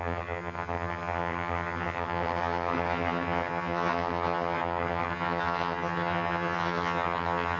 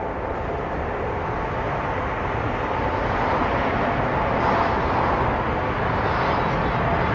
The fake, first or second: first